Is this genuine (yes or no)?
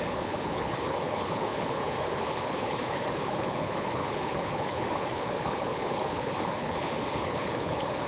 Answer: no